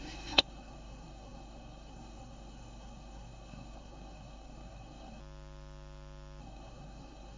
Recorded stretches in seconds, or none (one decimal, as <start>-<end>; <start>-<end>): 5.2-6.4